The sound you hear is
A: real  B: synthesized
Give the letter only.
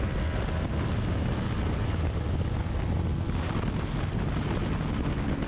A